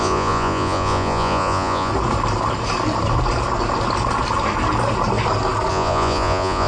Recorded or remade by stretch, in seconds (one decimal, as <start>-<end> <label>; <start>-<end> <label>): 0.0-1.9 remade; 1.9-5.7 recorded; 5.7-6.7 remade